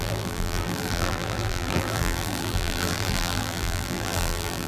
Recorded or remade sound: remade